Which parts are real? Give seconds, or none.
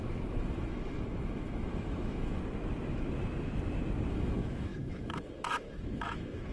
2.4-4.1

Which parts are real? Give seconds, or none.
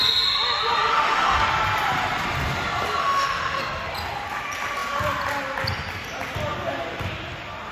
0.0-0.9; 1.4-3.0; 3.6-7.7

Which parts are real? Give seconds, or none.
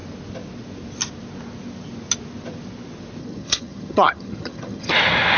0.0-3.2; 4.9-5.4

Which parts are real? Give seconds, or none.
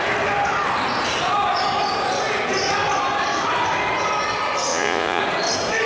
0.0-4.7; 5.2-5.9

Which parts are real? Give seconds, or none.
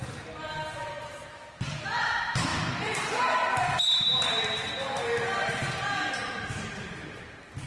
none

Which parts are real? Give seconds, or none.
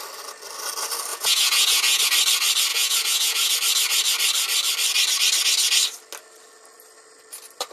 0.0-1.1; 2.0-2.7; 3.5-7.7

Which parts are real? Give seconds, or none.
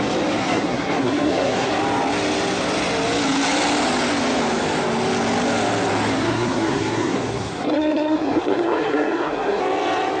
0.0-0.4; 1.7-6.1; 9.6-10.2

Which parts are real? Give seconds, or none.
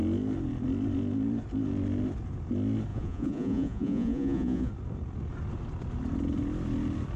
0.0-2.9; 4.7-7.2